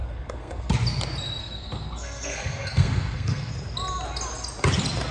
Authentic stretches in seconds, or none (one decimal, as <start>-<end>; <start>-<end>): 0.7-1.4; 3.5-5.1